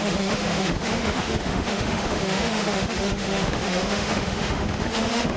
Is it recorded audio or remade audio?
remade